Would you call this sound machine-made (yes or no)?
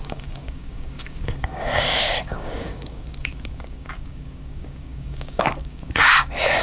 yes